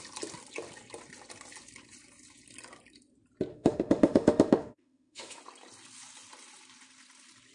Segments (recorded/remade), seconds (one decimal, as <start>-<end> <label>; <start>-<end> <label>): 0.0-3.5 recorded; 3.5-5.4 remade; 5.4-7.5 recorded